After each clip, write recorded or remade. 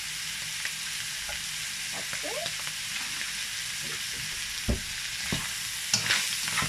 recorded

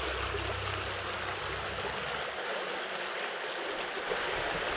recorded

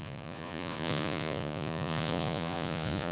remade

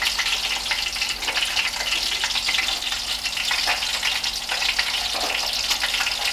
recorded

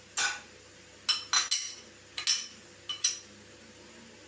recorded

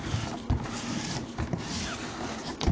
recorded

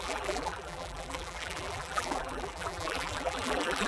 remade